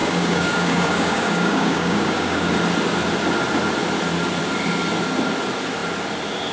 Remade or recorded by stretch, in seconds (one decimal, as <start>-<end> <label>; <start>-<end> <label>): 0.0-2.5 remade; 2.5-6.5 recorded